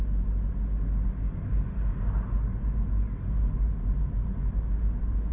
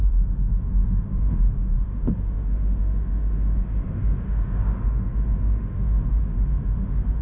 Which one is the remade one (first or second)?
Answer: second